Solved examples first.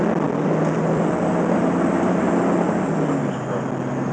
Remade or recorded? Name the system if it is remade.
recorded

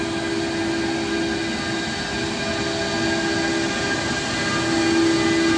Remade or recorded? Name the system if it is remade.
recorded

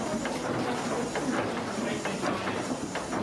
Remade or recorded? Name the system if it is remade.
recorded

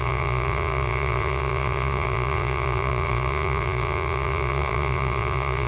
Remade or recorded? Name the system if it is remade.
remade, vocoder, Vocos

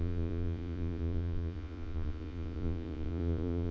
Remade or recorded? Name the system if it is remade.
remade, vocoder, Vocos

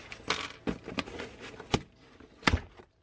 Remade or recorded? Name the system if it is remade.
recorded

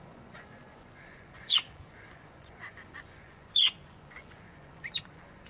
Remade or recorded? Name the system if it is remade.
remade, vocoder, Vocos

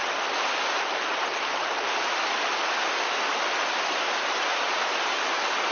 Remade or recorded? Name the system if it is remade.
recorded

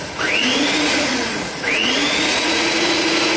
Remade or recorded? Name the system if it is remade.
remade, vocoder, Vocos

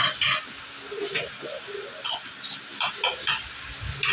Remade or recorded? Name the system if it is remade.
recorded